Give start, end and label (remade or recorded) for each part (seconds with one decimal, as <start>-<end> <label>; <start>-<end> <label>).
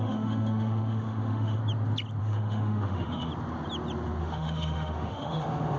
0.0-1.6 remade; 1.6-2.2 recorded; 2.2-3.3 remade; 3.3-4.2 recorded; 4.2-5.8 remade